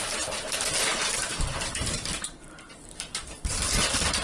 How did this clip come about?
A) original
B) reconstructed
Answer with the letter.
B